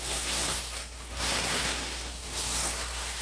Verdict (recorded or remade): remade